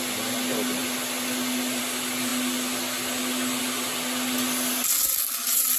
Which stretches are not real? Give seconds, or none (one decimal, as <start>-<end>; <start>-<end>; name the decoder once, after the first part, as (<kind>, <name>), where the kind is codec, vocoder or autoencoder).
none